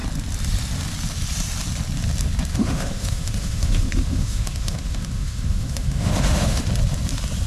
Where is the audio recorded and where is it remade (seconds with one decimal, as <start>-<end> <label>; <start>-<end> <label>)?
0.0-2.5 recorded; 2.5-6.6 remade; 6.6-7.5 recorded